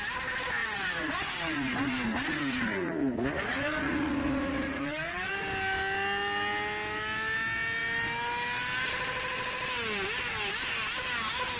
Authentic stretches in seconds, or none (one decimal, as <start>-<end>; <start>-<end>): 0.0-0.6; 5.3-11.6